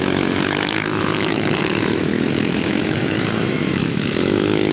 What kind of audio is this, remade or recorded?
remade